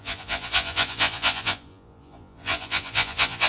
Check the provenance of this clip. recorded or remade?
remade